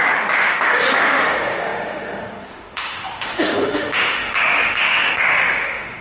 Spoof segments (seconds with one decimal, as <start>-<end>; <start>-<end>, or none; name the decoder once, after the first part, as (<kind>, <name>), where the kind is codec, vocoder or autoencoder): 0.0-6.0 (autoencoder, DAC-VAE)